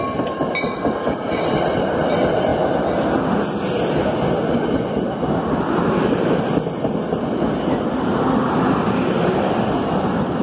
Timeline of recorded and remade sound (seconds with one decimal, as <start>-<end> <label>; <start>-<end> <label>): 0.0-10.4 recorded